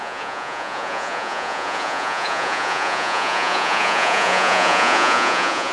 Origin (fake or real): fake